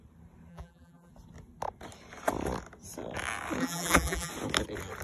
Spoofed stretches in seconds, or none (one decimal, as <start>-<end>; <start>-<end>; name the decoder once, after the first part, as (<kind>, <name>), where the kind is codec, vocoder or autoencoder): 0.5-1.1 (vocoder, BigVGAN v2); 3.6-4.3